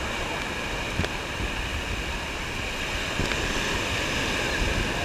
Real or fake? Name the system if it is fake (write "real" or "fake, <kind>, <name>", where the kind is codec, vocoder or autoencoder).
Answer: real